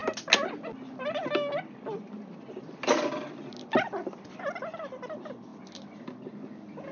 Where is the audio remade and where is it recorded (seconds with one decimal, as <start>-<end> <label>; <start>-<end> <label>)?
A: 0.0-6.9 recorded